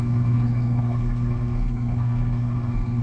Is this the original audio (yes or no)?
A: no